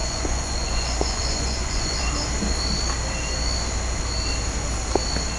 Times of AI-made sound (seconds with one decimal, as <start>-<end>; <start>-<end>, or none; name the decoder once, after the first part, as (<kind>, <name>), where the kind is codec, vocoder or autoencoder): 0.0-2.0 (vocoder, Vocos)